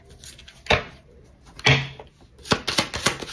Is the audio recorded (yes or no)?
yes